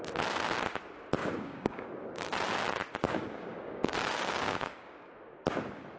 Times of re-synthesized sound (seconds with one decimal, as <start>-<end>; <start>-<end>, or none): 1.2-1.9; 3.0-5.1